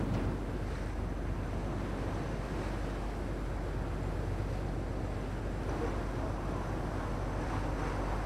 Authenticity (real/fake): real